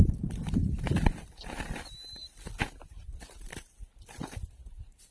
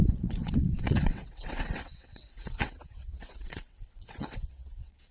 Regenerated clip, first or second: second